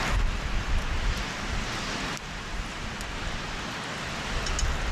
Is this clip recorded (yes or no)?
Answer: yes